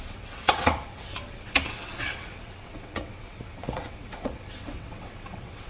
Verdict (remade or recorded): remade